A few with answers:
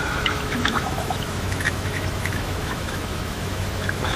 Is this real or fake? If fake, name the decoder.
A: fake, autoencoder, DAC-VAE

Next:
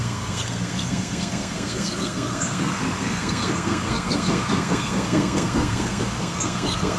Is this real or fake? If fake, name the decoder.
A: fake, codec, SNAC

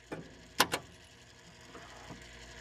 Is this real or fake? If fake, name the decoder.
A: real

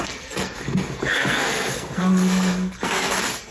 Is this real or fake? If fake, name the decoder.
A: fake, codec, SNAC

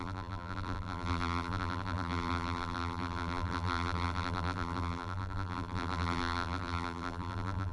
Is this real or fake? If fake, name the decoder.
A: fake, vocoder, BigVGAN v2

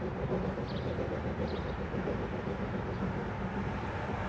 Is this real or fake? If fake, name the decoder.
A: real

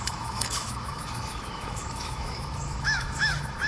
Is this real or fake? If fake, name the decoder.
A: fake, autoencoder, DAC-VAE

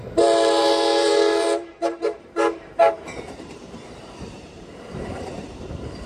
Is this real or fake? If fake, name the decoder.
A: fake, vocoder, BigVGAN v2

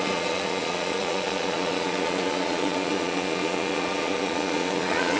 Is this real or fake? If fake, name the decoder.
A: fake, vocoder, Vocos